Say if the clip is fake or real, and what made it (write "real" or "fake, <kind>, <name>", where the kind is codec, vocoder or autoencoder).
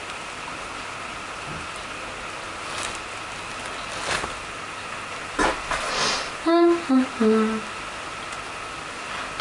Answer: real